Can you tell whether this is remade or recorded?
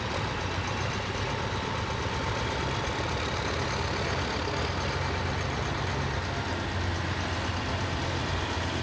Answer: recorded